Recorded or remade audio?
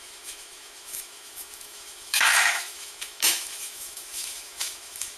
remade